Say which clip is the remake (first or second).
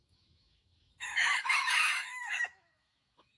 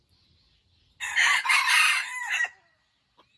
first